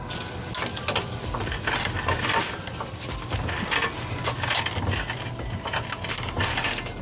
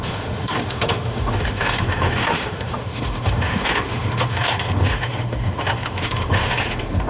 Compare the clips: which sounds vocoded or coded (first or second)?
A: second